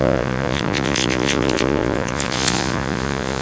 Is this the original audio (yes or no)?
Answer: no